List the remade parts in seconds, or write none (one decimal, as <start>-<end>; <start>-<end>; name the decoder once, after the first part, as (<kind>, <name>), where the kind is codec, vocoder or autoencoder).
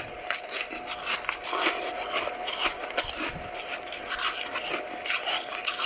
none